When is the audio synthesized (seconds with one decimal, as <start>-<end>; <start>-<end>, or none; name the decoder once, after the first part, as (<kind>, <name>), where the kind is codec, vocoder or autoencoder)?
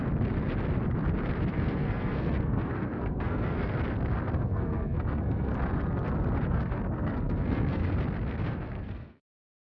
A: 1.5-3.8 (codec, SNAC); 4.3-5.5; 6.5-7.8; 8.4-9.7